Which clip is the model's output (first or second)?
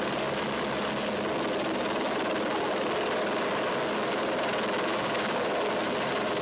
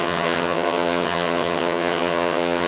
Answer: second